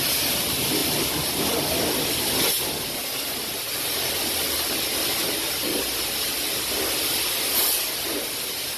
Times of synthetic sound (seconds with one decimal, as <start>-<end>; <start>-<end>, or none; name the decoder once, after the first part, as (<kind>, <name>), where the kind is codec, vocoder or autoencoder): none